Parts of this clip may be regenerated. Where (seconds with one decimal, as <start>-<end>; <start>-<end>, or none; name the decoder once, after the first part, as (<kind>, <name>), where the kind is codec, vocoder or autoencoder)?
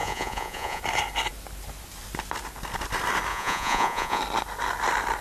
0.0-0.8 (vocoder, Vocos); 3.3-4.2